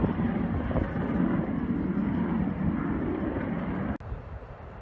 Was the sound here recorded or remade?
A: recorded